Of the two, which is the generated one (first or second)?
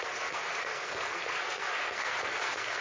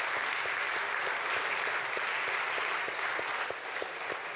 first